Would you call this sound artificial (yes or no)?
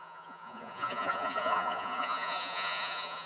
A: yes